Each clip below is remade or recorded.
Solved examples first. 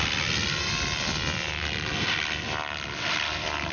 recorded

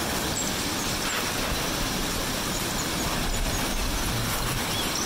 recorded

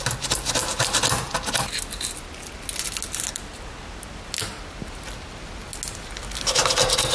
recorded